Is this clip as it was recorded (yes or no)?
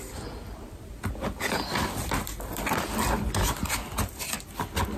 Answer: yes